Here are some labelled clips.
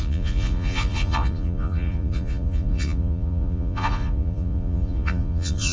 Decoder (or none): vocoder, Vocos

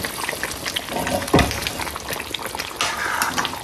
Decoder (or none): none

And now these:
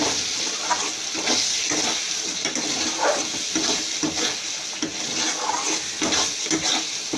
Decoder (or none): none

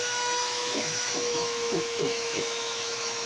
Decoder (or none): autoencoder, DAC-VAE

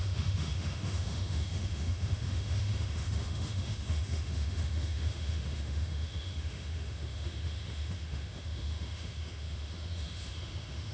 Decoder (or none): autoencoder, DAC-VAE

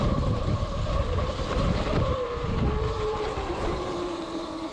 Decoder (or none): vocoder, BigVGAN v2